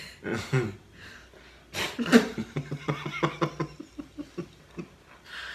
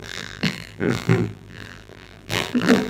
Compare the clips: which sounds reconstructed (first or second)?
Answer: second